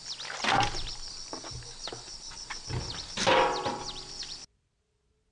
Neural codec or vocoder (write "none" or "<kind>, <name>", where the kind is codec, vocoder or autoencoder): none